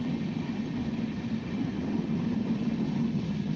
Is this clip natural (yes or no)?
no